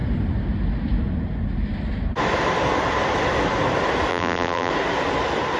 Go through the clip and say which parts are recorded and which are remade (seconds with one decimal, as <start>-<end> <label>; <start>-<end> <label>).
0.0-4.1 recorded; 4.1-4.7 remade; 4.7-5.6 recorded